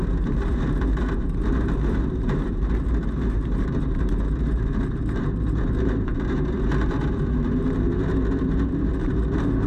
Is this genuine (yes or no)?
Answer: no